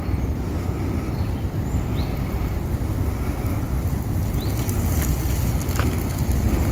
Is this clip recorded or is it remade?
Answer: recorded